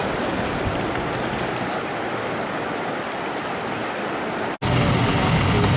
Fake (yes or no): no